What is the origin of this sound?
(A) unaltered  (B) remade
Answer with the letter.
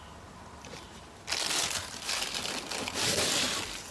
A